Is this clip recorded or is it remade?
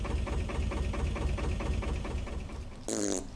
recorded